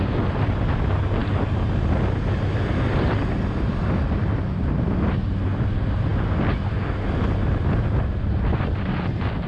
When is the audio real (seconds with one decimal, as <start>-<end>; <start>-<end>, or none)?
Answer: 0.0-9.5